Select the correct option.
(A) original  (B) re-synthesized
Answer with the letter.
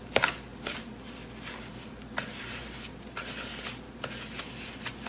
A